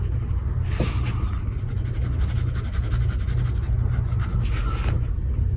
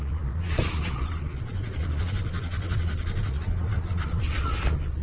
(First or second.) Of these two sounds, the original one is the first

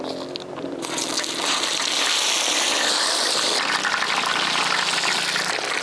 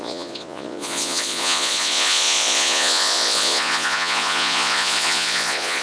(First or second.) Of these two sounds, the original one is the first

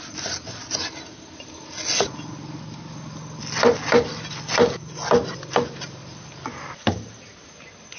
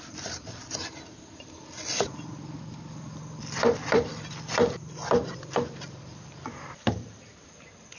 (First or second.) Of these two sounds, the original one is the first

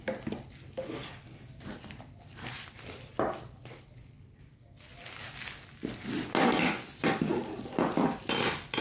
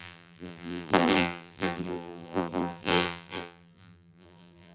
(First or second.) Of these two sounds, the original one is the first